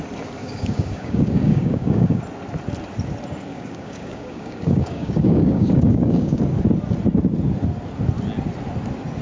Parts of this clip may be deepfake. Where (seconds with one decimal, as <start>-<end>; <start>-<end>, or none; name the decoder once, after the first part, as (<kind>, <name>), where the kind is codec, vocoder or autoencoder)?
0.4-2.2 (codec, DAC); 3.5-6.4